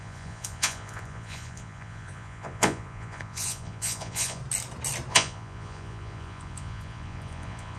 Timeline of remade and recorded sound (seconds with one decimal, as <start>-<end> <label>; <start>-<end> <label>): 0.0-4.4 remade; 4.4-5.1 recorded; 5.1-7.8 remade